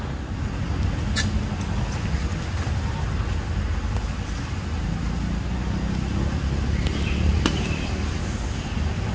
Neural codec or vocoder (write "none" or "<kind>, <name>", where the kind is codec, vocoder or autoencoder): none